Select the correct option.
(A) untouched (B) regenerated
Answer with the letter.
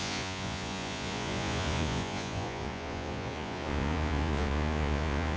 B